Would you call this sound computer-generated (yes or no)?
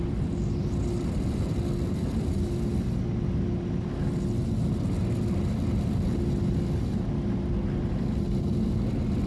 no